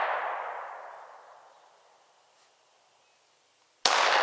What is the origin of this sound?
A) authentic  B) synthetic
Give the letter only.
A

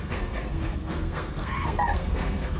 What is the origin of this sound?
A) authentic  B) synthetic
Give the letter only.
B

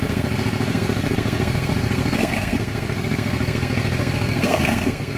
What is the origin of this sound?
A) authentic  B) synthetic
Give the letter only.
B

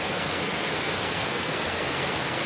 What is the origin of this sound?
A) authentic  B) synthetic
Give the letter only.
B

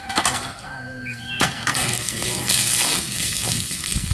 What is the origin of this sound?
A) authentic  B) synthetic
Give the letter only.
B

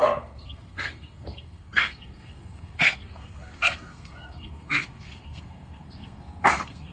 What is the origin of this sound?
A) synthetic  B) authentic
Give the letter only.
A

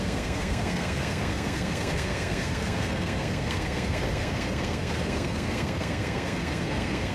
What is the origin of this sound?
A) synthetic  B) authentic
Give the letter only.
A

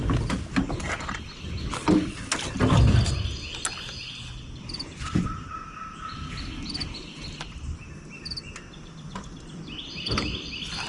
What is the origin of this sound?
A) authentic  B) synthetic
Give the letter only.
A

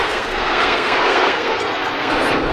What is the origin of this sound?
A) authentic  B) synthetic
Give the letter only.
B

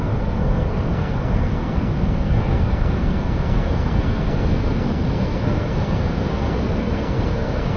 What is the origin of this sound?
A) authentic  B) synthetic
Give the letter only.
B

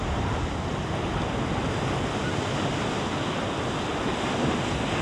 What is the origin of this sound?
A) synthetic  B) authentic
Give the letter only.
B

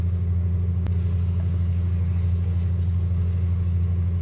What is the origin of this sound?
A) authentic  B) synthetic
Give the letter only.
A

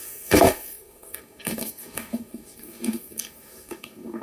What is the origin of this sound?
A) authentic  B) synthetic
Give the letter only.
B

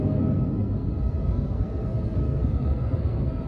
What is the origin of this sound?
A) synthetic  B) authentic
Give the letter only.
A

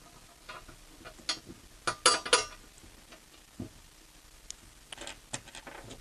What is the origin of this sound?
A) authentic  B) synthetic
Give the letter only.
A